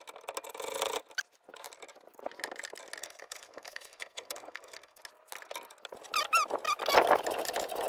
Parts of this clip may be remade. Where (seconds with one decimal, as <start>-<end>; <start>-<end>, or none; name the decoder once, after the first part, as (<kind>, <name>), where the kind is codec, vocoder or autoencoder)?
3.0-5.0 (codec, SNAC)